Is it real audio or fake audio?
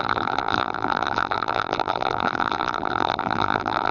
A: fake